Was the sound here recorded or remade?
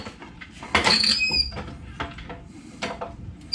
recorded